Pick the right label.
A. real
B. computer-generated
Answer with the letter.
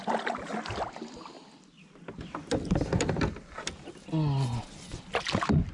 A